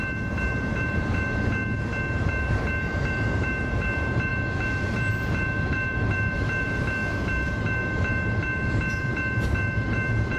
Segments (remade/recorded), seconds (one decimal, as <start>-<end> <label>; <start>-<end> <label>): 0.0-1.6 remade; 1.6-2.2 recorded; 2.2-10.4 remade